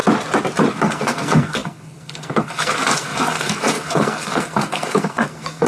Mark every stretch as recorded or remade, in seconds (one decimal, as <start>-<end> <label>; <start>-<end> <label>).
0.0-0.7 recorded; 0.7-5.7 remade